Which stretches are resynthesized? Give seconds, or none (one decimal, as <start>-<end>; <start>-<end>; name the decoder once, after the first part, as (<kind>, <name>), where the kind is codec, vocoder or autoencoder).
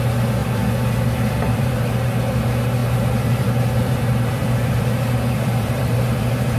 0.4-1.7 (vocoder, BigVGAN v2); 2.8-6.6